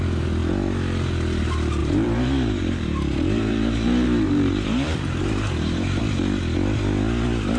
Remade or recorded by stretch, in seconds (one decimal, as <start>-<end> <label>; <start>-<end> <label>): 0.0-1.8 recorded; 1.8-6.0 remade; 6.0-7.6 recorded